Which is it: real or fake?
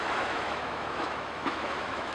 fake